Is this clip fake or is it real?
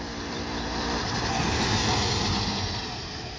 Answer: fake